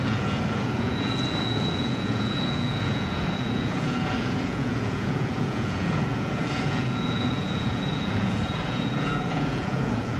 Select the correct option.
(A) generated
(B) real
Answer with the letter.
A